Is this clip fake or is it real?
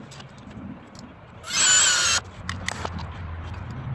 real